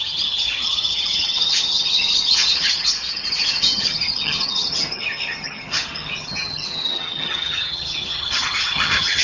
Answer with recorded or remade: remade